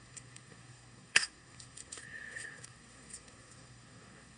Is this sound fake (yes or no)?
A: yes